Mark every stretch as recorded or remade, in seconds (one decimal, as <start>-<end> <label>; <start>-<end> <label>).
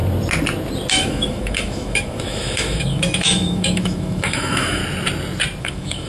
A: 0.0-0.9 recorded; 0.9-4.8 remade; 4.8-5.6 recorded; 5.6-6.1 remade